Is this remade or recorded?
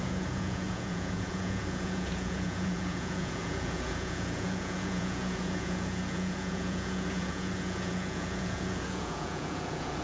remade